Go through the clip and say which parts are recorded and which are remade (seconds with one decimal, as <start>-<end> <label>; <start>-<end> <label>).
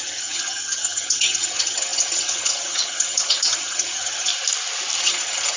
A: 0.0-4.3 remade; 4.3-5.0 recorded; 5.0-5.6 remade